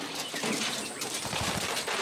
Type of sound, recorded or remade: remade